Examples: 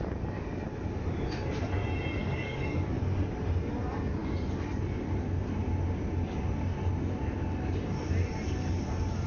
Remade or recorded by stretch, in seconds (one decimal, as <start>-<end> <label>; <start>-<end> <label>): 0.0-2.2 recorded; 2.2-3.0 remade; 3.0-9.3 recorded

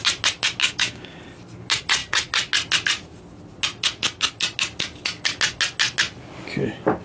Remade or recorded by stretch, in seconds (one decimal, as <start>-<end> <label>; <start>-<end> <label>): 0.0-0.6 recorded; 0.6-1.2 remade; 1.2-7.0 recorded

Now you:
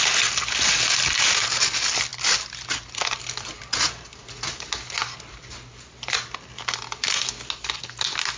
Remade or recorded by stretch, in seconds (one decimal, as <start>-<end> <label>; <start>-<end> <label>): 0.0-8.4 recorded

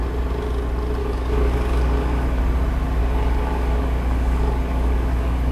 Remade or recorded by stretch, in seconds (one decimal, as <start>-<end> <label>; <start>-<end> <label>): 0.0-1.0 recorded; 1.0-2.4 remade; 2.4-3.0 recorded; 3.0-5.5 remade

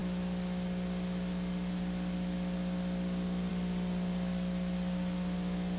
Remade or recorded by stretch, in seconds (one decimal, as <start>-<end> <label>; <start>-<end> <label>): 0.0-5.8 recorded

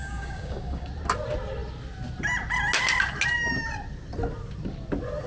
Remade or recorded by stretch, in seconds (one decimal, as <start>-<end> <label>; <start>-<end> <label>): 0.0-0.9 remade; 0.9-5.3 recorded

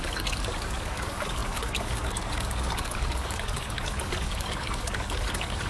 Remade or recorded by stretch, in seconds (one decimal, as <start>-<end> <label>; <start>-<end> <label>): 0.0-5.7 remade

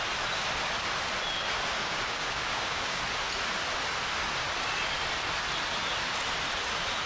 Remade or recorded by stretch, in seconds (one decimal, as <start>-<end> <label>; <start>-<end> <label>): 0.0-1.8 recorded; 1.8-3.0 remade; 3.0-7.1 recorded